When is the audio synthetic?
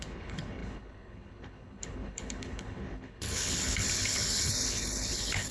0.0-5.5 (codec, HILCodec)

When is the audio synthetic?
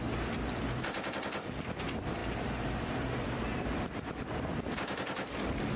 2.2-5.8 (vocoder, BigVGAN v2)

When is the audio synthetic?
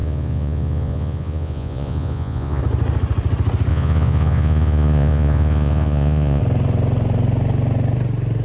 0.0-2.6 (vocoder, Vocos); 3.7-6.4